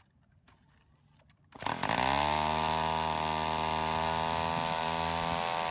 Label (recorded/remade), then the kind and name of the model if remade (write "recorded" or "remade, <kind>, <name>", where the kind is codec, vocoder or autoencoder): recorded